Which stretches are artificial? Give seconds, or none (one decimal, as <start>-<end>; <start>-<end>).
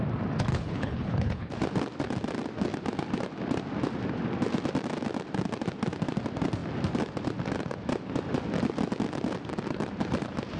0.5-1.5